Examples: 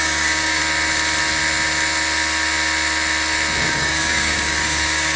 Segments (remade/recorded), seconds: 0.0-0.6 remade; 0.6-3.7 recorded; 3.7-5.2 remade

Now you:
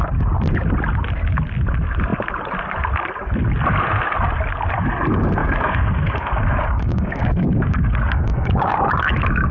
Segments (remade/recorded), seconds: 0.0-5.4 recorded; 5.4-8.9 remade; 8.9-9.5 recorded

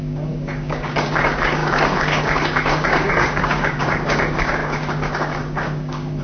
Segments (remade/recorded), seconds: 0.0-6.2 remade

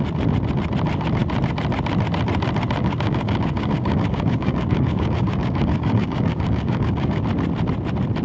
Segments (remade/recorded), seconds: 0.0-2.8 recorded; 2.8-7.2 remade; 7.2-8.2 recorded

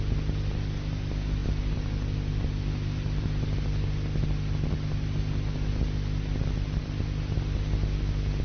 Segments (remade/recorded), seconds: 0.0-8.4 recorded